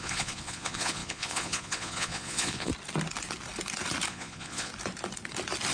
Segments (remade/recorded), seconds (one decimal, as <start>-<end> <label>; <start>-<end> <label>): 0.0-2.7 remade; 2.7-4.1 recorded; 4.1-4.7 remade; 4.7-5.7 recorded